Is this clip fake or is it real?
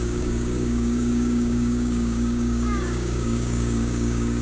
fake